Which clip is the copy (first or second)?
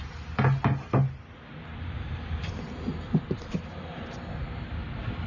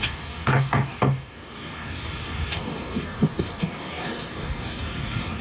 second